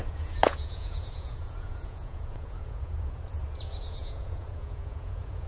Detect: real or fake fake